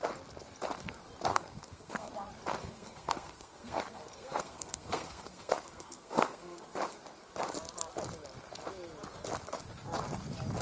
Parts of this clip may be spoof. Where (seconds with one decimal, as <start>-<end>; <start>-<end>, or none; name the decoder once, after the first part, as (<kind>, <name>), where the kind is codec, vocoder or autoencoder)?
1.3-2.1 (codec, SNAC); 2.6-6.6